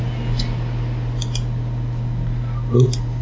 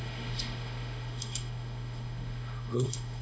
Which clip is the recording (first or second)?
first